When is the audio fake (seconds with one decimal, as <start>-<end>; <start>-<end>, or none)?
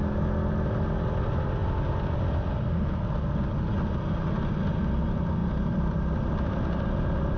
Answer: none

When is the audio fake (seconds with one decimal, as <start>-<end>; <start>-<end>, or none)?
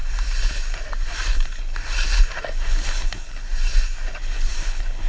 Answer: none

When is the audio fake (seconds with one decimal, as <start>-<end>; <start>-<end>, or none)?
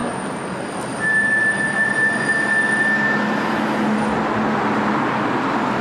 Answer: none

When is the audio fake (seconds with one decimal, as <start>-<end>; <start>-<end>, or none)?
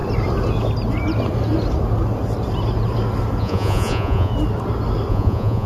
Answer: 3.4-4.3; 5.1-5.7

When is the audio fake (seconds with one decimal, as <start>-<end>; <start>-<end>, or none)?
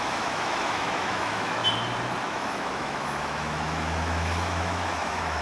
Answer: 0.0-1.6; 2.2-5.4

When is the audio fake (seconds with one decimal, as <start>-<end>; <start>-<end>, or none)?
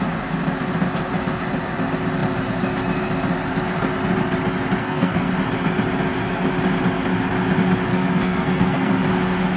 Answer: 4.8-5.3; 7.9-9.0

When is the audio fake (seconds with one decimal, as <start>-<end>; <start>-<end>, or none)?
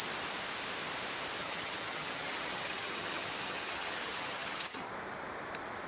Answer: 1.4-4.9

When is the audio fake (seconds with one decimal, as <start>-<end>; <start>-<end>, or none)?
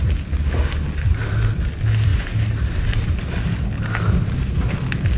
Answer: none